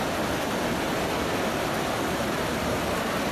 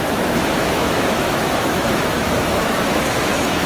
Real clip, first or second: first